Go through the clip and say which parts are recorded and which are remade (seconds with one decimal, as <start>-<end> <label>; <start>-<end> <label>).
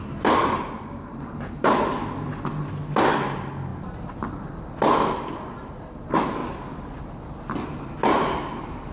0.0-8.9 recorded